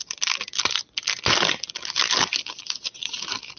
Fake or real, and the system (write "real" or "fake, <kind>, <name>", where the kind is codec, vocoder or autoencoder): real